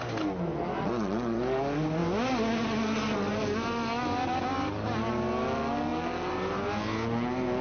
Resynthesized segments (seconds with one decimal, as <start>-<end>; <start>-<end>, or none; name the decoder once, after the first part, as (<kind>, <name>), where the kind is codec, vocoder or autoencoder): none